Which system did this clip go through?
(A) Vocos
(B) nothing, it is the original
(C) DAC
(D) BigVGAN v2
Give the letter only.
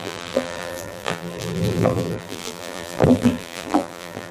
D